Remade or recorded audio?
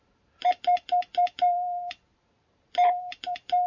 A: remade